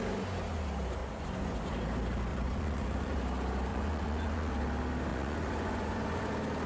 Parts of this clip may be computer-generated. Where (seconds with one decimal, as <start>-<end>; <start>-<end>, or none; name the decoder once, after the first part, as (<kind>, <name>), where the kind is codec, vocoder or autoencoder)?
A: 1.0-1.7 (vocoder, Vocos); 2.3-3.2; 3.7-4.5; 5.1-6.3